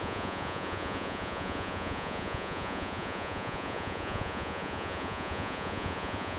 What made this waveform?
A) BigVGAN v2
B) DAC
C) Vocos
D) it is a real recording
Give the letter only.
C